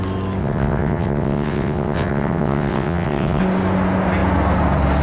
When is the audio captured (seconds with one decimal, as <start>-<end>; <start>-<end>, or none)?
0.0-0.4; 3.4-5.0